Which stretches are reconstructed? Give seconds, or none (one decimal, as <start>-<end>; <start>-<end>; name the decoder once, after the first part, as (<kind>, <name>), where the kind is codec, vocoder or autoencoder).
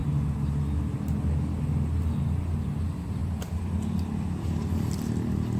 none